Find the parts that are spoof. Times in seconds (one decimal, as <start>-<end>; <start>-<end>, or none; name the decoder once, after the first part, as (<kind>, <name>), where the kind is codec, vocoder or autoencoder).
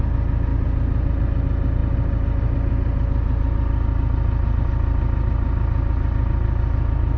none